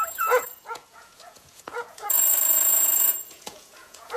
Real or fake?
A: fake